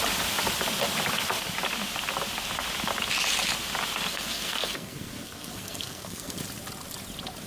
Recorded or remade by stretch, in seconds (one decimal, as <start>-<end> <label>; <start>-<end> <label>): 0.0-4.1 recorded; 4.1-6.4 remade; 6.4-7.5 recorded

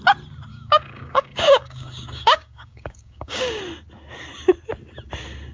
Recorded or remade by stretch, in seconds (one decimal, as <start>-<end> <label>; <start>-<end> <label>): 0.0-0.5 recorded; 0.5-3.6 remade; 3.6-5.5 recorded